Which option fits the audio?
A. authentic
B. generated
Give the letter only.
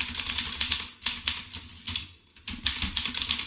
A